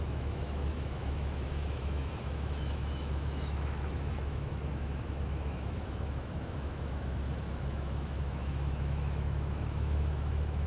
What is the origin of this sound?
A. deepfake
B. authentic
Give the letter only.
A